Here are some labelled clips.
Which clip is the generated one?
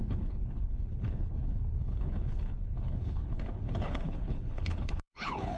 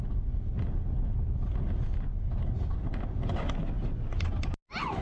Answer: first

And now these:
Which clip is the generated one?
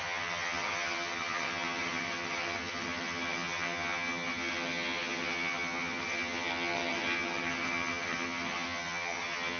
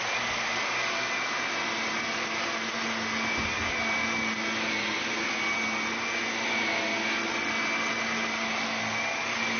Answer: first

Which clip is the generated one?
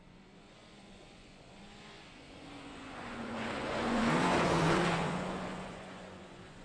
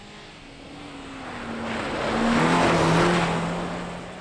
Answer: first